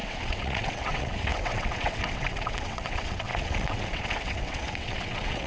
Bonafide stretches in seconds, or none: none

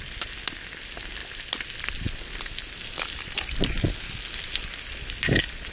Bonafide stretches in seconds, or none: 0.0-5.7

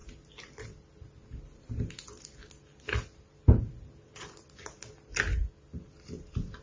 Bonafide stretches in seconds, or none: 0.0-6.6

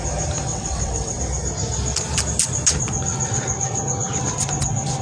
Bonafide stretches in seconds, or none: 0.0-0.5; 1.2-5.0

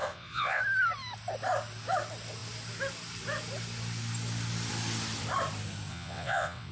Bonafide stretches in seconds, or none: 0.6-5.9

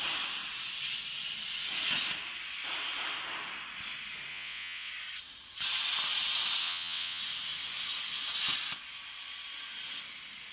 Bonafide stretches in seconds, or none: 0.0-4.3; 4.9-6.6; 7.2-10.5

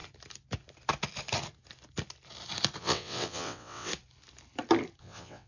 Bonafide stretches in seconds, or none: 0.0-2.8; 3.9-5.0

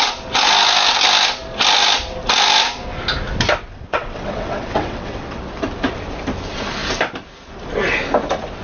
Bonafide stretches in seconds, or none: 0.0-3.7; 5.4-8.6